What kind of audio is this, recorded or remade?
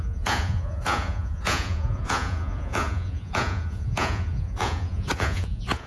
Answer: remade